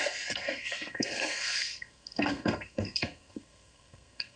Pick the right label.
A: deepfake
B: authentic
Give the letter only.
A